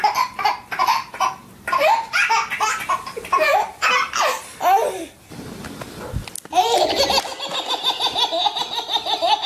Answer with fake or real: real